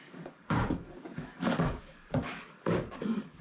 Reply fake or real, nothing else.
fake